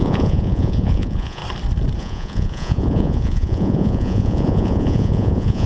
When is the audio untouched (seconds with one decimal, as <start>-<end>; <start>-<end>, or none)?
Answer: 1.4-2.0